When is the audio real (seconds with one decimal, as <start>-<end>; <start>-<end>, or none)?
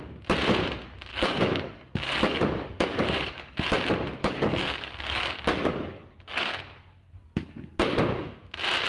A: 0.0-1.1; 3.7-4.2; 6.6-8.9